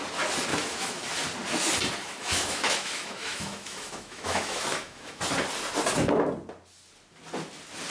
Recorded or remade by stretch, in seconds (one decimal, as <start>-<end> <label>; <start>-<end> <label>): 0.0-0.5 recorded; 0.5-1.1 remade; 1.1-2.0 recorded; 2.0-5.2 remade; 5.2-7.9 recorded